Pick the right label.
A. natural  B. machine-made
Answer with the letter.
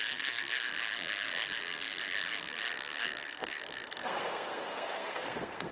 B